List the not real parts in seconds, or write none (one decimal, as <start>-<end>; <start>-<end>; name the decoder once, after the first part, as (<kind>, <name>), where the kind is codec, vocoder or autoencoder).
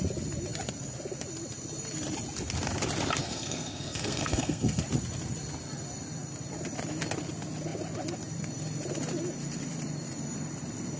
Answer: 3.2-4.8 (codec, SNAC)